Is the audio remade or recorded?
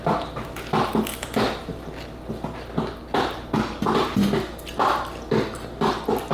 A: recorded